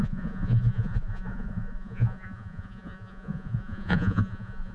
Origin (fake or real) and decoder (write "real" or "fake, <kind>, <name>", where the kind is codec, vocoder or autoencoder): fake, vocoder, Vocos